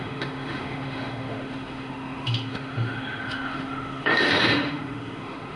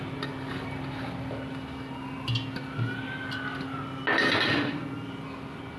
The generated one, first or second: first